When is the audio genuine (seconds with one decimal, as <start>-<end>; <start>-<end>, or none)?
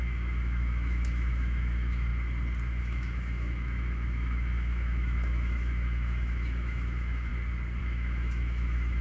2.1-2.8; 7.3-7.8